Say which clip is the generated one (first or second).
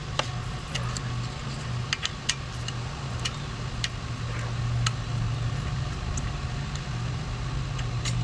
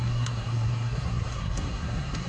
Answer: second